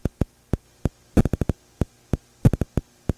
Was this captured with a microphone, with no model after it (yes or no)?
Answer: yes